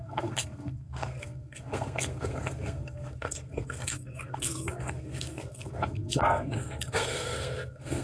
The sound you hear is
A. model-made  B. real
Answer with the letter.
A